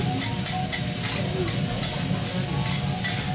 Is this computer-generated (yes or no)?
no